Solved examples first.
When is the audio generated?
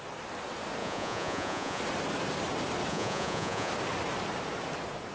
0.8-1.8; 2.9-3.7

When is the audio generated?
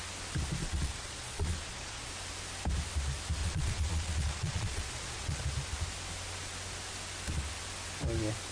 0.6-2.1; 3.4-5.4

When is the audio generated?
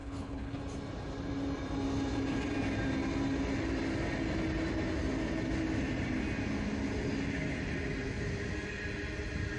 0.0-0.6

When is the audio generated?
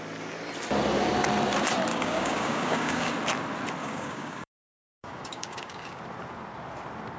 1.9-3.1; 3.8-6.0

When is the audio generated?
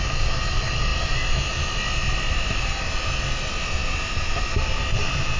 none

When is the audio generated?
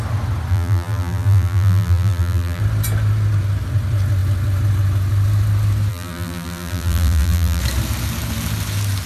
0.5-2.6; 5.9-7.6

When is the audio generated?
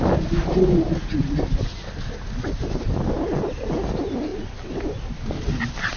none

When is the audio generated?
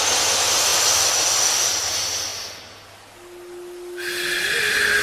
none